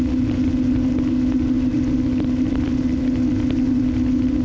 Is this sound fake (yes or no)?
no